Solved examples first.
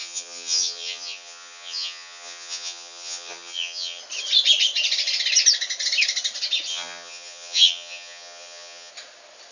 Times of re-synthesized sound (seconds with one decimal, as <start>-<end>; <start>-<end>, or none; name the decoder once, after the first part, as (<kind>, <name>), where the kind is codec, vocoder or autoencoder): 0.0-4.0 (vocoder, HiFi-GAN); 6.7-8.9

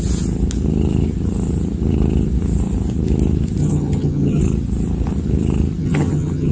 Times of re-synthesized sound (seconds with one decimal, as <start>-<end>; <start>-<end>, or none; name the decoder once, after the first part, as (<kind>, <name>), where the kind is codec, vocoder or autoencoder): 3.6-4.4 (vocoder, HiFi-GAN); 5.8-6.5

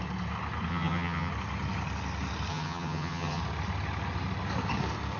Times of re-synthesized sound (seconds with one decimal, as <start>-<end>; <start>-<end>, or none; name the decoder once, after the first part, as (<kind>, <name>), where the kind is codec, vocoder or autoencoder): 0.7-1.3 (vocoder, HiFi-GAN); 2.5-3.4